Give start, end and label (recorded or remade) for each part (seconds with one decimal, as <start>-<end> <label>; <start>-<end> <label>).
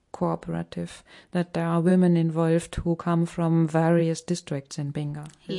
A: 0.0-5.6 recorded